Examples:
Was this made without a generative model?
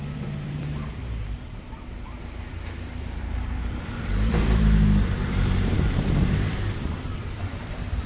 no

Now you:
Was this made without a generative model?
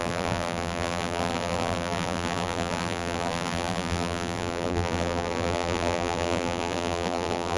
no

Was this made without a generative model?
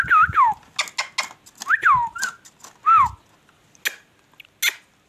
yes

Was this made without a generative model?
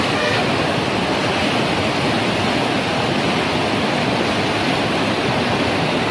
yes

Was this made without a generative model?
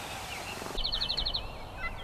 yes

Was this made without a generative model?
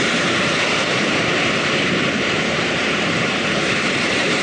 no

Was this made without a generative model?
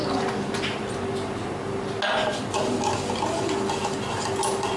yes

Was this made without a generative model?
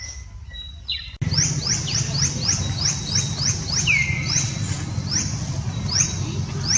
yes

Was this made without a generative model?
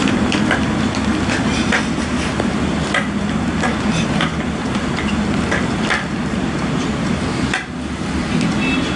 no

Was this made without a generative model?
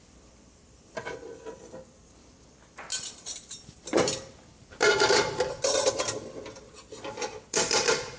no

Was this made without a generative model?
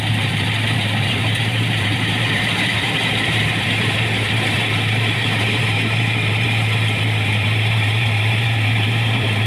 no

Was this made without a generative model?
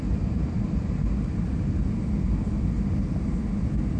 yes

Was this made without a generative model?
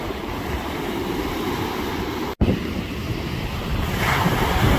no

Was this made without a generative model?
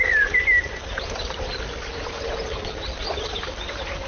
yes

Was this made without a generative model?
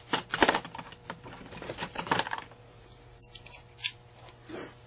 no